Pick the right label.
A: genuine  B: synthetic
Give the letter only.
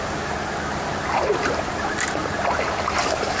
A